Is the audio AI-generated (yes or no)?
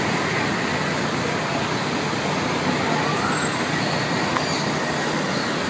no